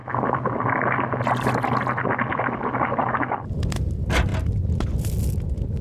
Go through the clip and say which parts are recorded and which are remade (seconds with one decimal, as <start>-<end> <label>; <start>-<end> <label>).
0.0-5.8 recorded